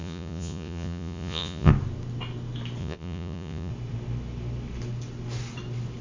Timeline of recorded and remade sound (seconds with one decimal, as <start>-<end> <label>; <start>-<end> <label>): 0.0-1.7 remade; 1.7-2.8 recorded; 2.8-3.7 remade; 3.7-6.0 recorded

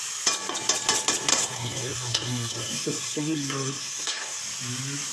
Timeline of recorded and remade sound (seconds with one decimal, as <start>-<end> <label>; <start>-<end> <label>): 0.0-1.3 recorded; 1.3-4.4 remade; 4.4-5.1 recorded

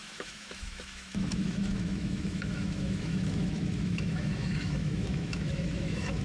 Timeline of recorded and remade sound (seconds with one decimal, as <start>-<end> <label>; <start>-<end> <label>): 0.0-6.2 remade

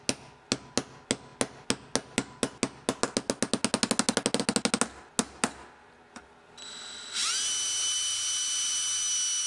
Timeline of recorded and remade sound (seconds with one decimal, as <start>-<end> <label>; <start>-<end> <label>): 0.0-9.5 recorded

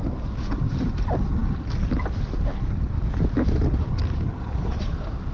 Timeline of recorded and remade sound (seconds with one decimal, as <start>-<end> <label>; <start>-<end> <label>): 0.0-5.3 recorded